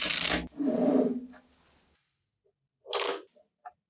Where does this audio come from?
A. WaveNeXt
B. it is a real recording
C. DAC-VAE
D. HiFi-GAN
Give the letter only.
B